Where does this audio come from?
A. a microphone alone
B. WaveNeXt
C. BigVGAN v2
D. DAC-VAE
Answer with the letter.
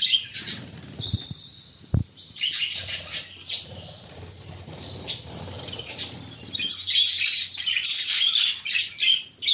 C